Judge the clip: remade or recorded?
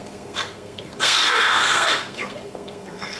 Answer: remade